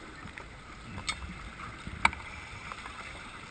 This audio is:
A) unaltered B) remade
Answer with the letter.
A